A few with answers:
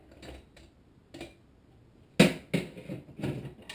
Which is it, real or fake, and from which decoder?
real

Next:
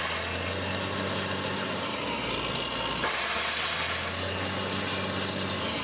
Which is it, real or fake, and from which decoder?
real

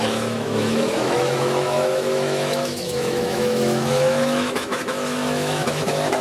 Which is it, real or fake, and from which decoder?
fake, autoencoder, DAC-VAE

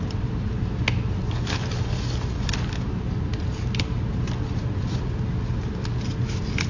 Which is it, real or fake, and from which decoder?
real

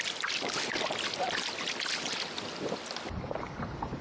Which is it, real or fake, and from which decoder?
real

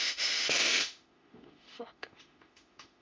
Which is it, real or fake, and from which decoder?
fake, autoencoder, DAC-VAE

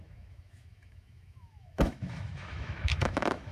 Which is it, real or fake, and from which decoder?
fake, autoencoder, DAC-VAE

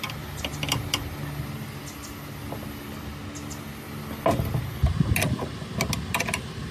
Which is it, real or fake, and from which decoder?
real